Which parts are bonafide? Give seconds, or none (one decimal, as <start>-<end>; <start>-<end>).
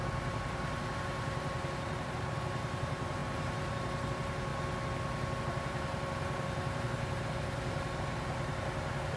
4.5-5.4